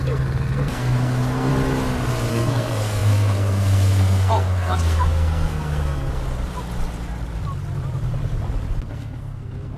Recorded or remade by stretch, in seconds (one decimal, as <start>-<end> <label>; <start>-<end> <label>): 0.0-1.5 remade; 1.5-2.3 recorded; 2.3-6.2 remade; 6.2-8.8 recorded; 8.8-9.8 remade